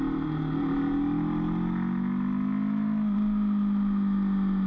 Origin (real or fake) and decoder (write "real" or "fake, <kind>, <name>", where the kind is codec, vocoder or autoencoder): real